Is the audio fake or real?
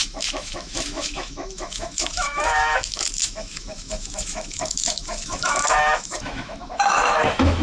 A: fake